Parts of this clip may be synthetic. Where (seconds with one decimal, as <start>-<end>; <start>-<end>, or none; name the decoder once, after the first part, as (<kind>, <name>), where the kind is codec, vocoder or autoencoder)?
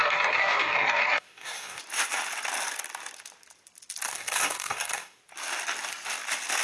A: 0.0-1.8 (codec, DAC); 4.1-5.2